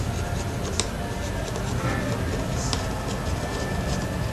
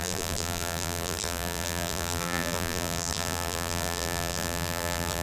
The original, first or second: first